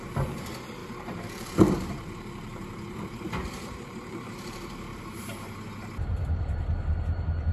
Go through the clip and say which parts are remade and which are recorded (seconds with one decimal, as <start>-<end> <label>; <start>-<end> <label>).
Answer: 0.0-0.8 recorded; 0.8-5.3 remade; 5.3-6.1 recorded; 6.1-7.5 remade